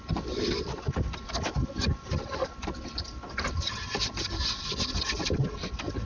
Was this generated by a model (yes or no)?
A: no